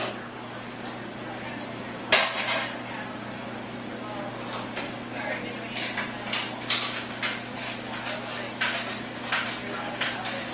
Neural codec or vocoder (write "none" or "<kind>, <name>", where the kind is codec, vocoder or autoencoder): none